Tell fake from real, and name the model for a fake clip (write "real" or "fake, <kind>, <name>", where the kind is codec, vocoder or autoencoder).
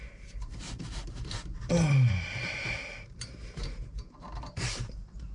fake, vocoder, BigVGAN v2